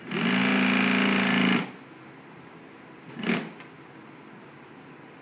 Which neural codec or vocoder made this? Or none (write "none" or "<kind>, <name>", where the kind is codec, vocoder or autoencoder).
none